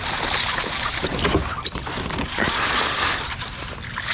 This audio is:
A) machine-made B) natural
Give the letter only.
B